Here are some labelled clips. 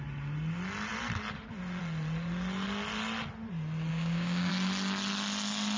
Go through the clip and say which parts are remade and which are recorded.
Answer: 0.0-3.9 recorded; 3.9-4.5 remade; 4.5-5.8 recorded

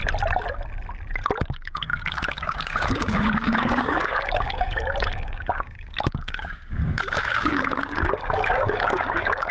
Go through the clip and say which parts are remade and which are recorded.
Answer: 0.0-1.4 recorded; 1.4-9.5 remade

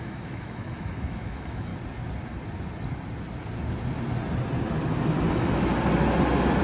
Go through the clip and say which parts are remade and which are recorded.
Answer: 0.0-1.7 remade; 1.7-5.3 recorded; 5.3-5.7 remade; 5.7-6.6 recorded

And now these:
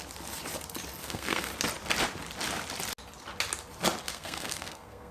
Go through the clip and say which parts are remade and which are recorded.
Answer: 0.0-1.0 recorded; 1.0-1.5 remade; 1.5-4.0 recorded; 4.0-5.1 remade

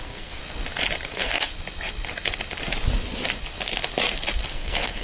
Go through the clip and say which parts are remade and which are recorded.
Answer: 0.0-0.4 remade; 0.4-1.1 recorded; 1.1-1.5 remade; 1.5-4.5 recorded; 4.5-5.0 remade

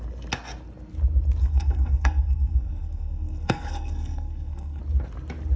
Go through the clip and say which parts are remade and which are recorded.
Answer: 0.0-1.4 recorded; 1.4-4.8 remade; 4.8-5.6 recorded

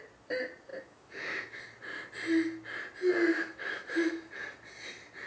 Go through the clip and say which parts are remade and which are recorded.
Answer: 0.0-0.7 recorded; 0.7-1.6 remade; 1.6-3.3 recorded; 3.3-4.3 remade; 4.3-5.3 recorded

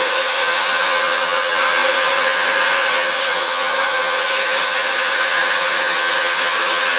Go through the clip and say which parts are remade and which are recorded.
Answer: 0.0-7.0 remade